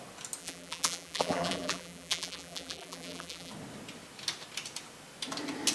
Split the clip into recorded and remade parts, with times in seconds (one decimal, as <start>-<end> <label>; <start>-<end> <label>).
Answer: 0.0-0.4 recorded; 0.4-3.5 remade; 3.5-5.7 recorded